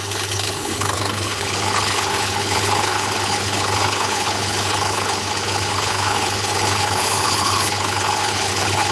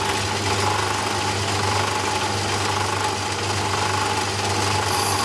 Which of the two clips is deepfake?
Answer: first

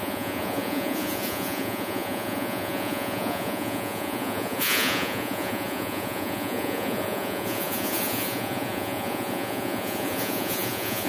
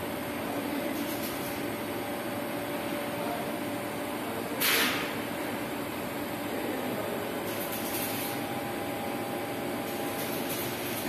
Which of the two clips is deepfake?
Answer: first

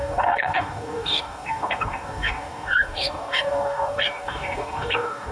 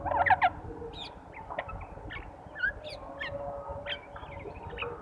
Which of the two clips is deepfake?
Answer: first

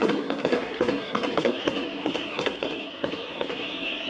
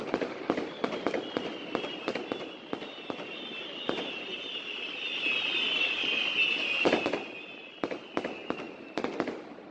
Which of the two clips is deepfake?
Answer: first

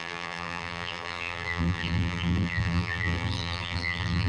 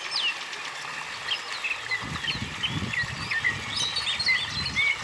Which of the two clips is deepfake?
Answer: first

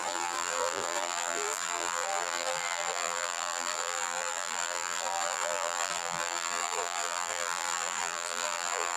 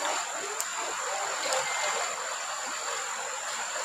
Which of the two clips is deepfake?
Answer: first